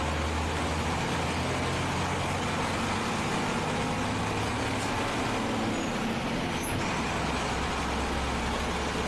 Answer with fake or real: real